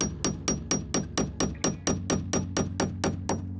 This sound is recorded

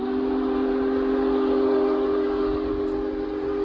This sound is recorded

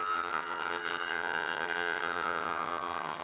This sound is remade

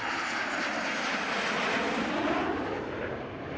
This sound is recorded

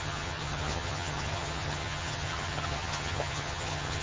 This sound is remade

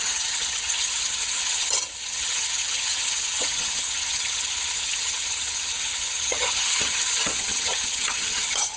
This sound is remade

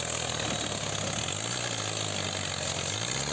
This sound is recorded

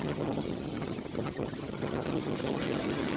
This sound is remade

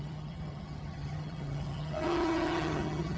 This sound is remade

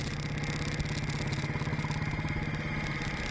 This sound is recorded